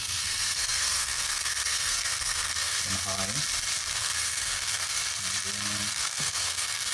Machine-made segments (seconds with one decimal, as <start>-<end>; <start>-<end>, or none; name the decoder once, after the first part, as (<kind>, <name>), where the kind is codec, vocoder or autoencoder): 0.0-2.8 (codec, SNAC); 3.9-5.0; 5.9-6.9